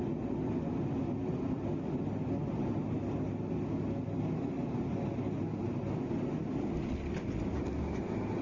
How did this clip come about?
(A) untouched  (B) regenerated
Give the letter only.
A